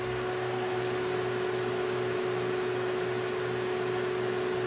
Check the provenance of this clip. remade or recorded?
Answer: recorded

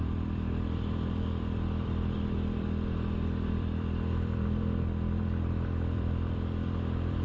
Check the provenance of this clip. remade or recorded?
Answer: remade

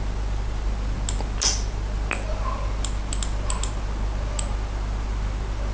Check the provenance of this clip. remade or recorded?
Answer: recorded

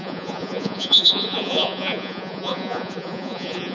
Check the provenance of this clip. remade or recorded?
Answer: remade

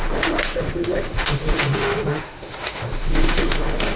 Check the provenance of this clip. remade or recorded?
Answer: remade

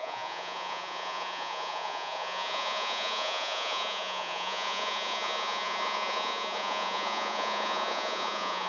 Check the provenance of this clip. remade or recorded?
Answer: remade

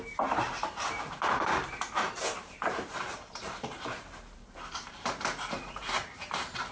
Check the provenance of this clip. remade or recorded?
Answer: remade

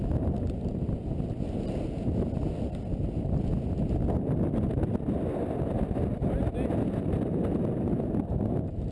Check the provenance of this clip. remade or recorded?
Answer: recorded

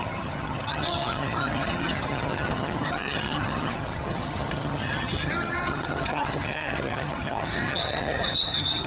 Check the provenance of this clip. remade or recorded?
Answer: remade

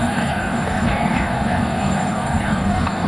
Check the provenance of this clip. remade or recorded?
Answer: remade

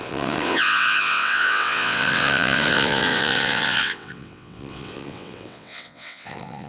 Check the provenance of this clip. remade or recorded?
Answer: remade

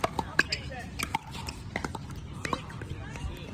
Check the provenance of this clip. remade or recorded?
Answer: remade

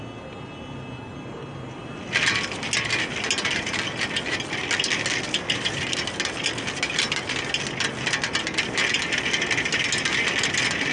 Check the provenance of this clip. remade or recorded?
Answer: recorded